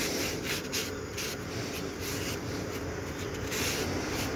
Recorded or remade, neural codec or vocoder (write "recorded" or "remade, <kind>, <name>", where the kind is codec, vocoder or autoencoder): recorded